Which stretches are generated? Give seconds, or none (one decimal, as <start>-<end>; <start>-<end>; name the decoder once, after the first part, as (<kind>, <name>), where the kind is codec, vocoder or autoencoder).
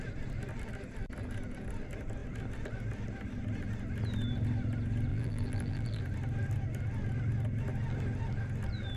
5.1-6.0 (vocoder, BigVGAN v2)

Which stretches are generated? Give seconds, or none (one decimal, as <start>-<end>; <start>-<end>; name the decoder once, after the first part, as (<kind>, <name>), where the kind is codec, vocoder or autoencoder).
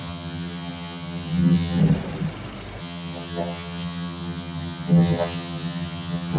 0.0-1.8 (vocoder, HiFi-GAN); 2.8-6.4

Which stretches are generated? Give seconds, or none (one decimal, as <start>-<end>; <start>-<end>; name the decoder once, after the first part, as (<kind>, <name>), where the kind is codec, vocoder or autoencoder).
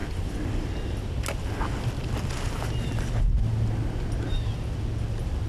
none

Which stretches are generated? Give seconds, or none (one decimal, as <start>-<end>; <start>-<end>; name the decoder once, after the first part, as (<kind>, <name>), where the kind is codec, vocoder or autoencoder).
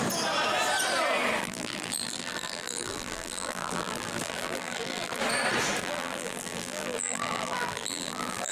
1.4-5.2 (vocoder, BigVGAN v2); 5.8-8.5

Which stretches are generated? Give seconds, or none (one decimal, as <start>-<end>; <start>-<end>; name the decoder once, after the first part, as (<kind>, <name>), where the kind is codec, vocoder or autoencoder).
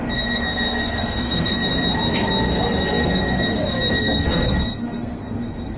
0.0-1.7 (codec, SNAC); 2.9-3.5; 4.0-5.8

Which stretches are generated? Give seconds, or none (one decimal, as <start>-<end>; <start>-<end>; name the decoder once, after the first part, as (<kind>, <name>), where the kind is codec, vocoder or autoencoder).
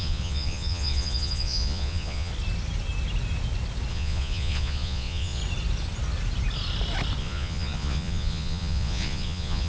0.0-2.3 (vocoder, Vocos); 3.9-5.4; 7.2-9.7